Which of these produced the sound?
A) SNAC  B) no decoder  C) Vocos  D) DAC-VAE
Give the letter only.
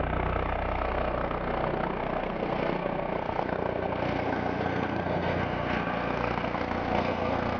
A